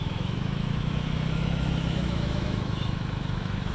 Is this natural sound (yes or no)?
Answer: no